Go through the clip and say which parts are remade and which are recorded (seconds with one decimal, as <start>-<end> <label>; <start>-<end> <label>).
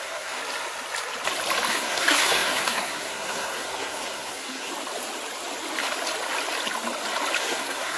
0.0-0.4 remade; 0.4-1.7 recorded; 1.7-4.7 remade; 4.7-7.4 recorded; 7.4-8.0 remade